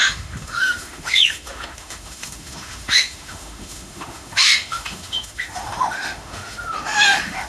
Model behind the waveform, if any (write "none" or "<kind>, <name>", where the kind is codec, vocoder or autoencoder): autoencoder, DAC-VAE